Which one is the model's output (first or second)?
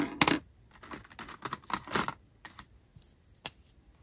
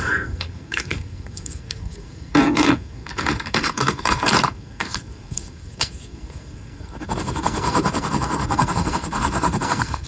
second